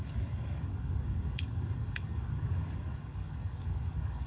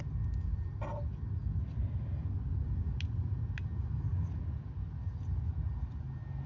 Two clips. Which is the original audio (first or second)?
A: second